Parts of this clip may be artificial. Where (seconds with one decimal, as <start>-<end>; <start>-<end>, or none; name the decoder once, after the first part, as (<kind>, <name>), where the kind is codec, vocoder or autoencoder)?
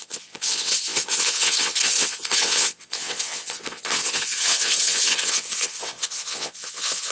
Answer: 0.0-7.1 (vocoder, WaveNeXt)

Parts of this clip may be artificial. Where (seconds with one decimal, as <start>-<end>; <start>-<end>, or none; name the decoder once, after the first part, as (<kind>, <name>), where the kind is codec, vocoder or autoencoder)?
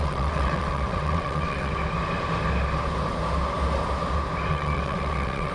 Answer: 0.0-1.7 (vocoder, WaveNeXt); 4.5-5.5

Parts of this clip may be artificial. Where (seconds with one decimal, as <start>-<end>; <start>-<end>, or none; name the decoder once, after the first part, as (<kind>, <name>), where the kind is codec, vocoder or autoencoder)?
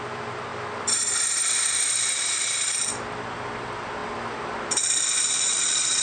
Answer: none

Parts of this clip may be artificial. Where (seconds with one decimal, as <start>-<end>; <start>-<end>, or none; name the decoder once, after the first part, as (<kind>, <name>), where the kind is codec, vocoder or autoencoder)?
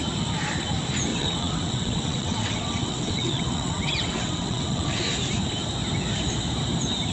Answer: 1.1-5.0 (vocoder, WaveNeXt)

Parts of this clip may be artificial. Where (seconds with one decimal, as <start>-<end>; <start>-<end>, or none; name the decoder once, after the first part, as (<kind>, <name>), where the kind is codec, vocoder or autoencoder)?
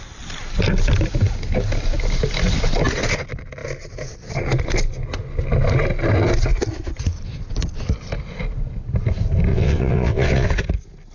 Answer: 9.5-10.5 (vocoder, WaveNeXt)